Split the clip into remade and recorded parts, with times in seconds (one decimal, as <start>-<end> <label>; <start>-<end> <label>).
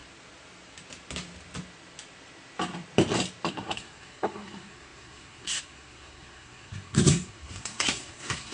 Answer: 0.0-3.5 recorded; 3.5-8.5 remade